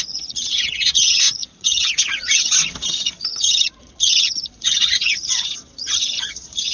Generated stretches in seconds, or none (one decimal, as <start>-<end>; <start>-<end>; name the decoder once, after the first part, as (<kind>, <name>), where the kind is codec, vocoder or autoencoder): 0.0-6.7 (vocoder, Vocos)